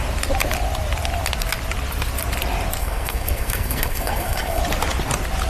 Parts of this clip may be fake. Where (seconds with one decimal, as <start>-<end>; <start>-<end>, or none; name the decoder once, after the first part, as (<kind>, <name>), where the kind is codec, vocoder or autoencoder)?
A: 2.8-4.6 (codec, SNAC)